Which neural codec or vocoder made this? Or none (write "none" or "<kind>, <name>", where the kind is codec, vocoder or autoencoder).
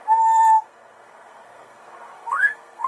codec, SNAC